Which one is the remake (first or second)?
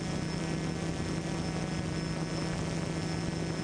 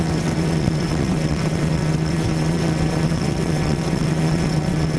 second